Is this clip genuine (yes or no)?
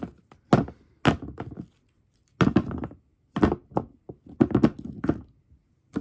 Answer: yes